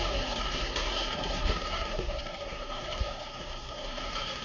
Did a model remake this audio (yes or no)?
yes